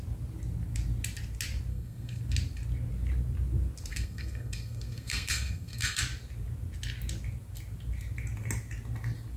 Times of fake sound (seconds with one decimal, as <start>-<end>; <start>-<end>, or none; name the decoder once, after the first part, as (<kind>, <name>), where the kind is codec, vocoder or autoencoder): 1.7-2.2 (codec, SNAC); 3.9-6.0